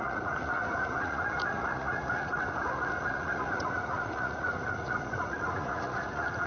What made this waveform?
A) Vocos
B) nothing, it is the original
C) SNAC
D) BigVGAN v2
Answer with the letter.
A